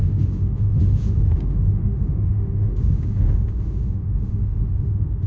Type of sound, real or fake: fake